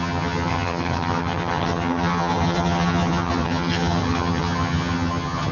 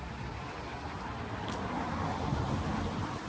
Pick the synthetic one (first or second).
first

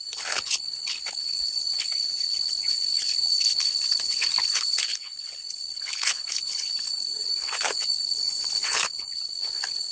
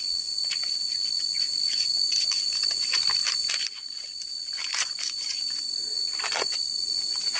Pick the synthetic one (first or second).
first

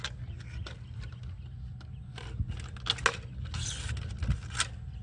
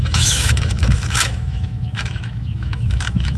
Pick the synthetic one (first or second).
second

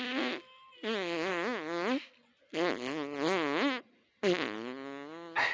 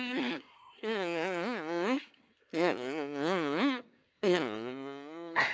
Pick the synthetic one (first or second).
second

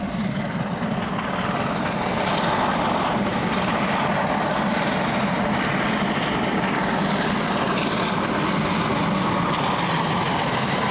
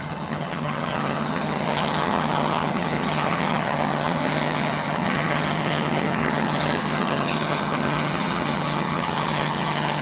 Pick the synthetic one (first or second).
second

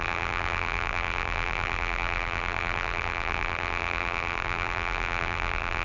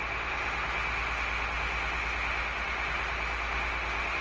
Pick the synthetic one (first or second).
first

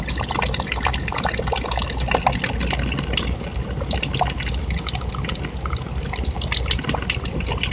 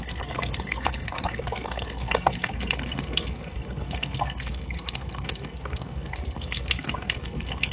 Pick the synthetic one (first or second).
second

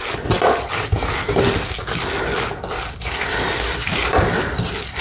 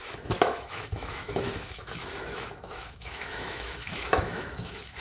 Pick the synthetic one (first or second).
second